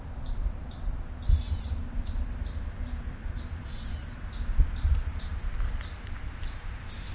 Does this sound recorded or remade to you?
recorded